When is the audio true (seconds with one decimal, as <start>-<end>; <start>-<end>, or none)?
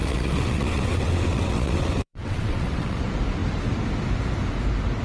3.0-5.0